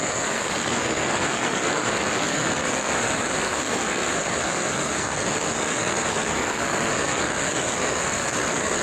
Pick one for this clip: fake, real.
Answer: fake